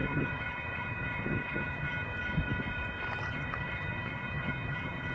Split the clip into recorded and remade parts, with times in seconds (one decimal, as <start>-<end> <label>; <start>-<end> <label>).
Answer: 0.0-2.1 remade; 2.1-3.2 recorded; 3.2-5.1 remade